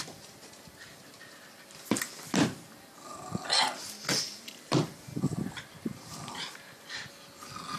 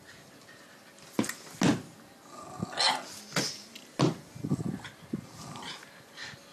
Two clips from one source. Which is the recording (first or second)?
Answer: second